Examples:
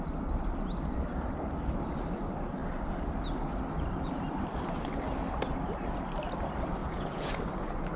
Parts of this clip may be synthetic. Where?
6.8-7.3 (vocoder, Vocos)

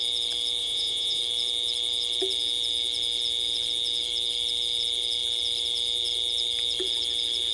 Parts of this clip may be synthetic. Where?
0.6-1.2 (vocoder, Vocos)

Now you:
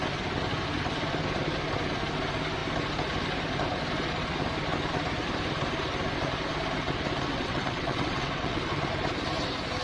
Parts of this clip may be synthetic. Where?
7.3-8.6 (vocoder, WaveNeXt)

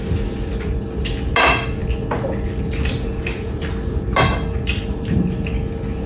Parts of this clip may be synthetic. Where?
none